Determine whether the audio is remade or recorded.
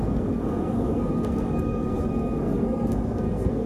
remade